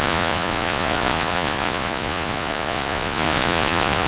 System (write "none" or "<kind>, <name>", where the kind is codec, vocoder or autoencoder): vocoder, Vocos